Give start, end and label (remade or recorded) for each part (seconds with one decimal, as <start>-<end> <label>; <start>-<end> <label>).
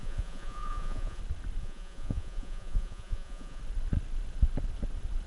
0.0-1.2 remade; 1.2-1.6 recorded; 1.6-3.6 remade; 3.6-5.3 recorded